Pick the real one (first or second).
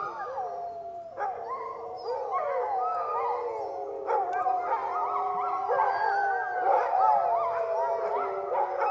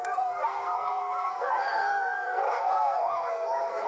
first